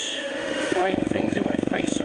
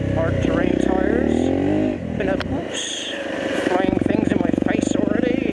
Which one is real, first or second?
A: second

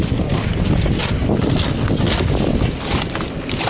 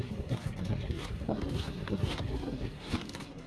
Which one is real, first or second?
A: first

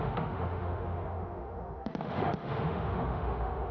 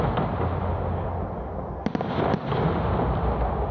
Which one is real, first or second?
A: second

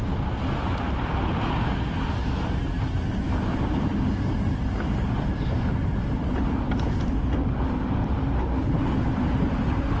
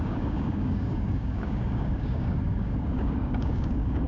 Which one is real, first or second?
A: first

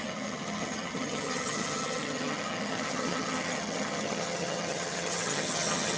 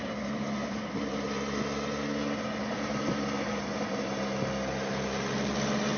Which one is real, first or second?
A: second